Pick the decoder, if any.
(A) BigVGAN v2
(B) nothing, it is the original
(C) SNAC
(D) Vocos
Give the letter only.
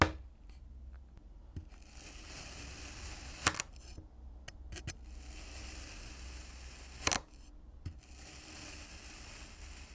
B